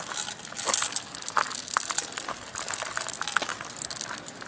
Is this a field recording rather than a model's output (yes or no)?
yes